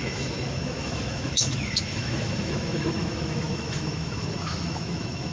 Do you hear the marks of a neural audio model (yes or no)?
yes